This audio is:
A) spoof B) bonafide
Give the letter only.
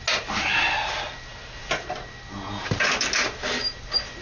B